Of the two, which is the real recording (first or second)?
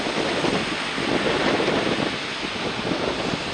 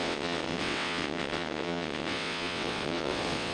first